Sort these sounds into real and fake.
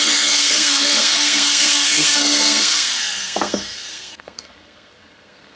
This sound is fake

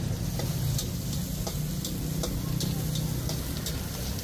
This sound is real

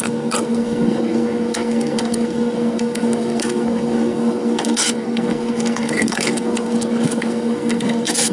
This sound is fake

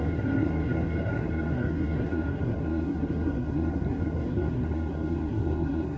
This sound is fake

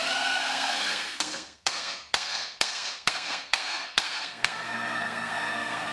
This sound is fake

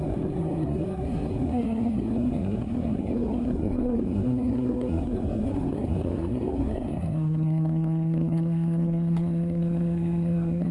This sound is fake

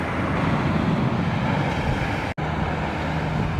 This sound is real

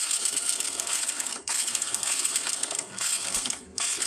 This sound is fake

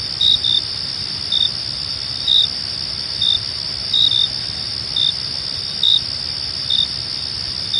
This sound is real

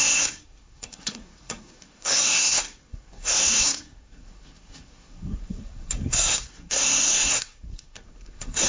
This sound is fake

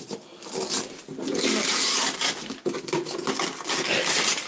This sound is real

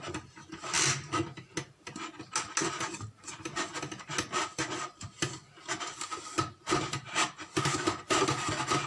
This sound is real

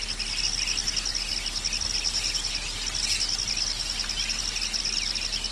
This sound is real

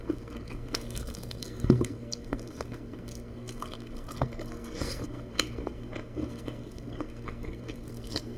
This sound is fake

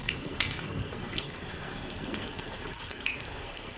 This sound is fake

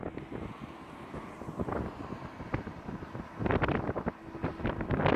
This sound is real